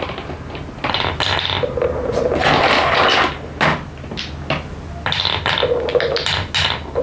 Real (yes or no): yes